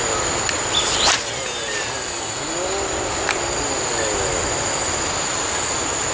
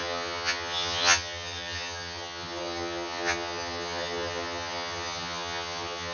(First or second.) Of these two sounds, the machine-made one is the second